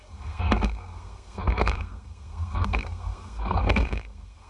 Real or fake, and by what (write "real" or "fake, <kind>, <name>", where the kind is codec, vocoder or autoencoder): fake, codec, SNAC